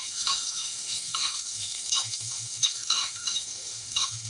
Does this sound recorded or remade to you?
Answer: remade